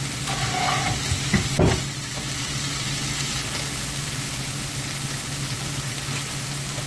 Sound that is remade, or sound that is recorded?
recorded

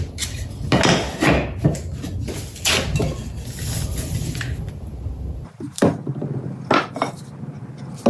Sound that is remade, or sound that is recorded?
recorded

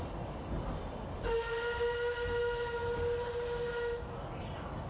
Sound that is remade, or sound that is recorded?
recorded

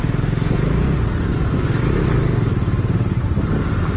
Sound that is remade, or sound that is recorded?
recorded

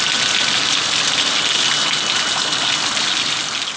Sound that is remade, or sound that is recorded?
recorded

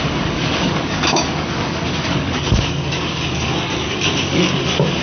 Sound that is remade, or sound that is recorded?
remade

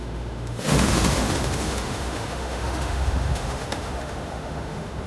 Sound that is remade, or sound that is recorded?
remade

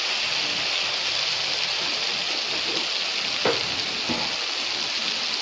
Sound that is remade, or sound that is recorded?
recorded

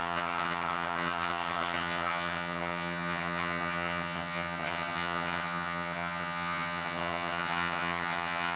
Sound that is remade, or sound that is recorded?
remade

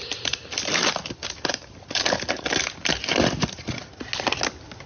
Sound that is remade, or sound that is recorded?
recorded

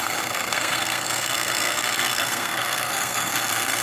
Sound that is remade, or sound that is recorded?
remade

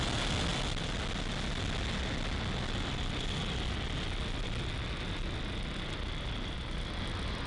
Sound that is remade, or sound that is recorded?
recorded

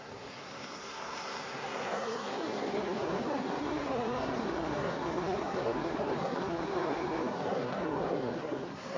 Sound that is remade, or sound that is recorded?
remade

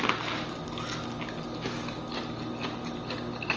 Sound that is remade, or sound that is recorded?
recorded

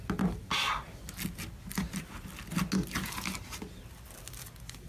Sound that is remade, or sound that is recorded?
recorded